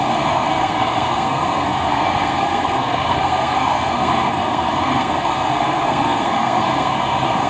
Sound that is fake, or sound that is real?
fake